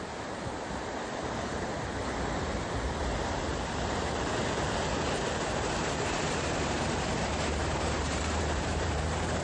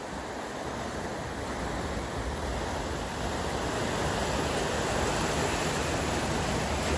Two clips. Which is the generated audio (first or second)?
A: first